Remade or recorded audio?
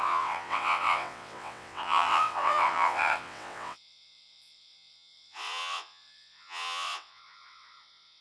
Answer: remade